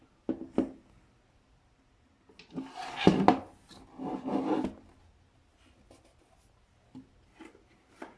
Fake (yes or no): no